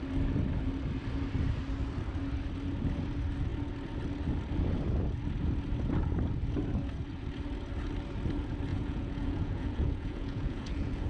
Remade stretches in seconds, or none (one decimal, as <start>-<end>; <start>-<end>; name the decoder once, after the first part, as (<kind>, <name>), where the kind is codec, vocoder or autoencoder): 8.7-11.1 (vocoder, Vocos)